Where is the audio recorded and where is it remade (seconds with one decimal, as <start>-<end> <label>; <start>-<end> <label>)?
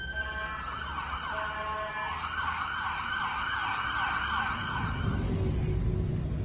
0.0-6.4 recorded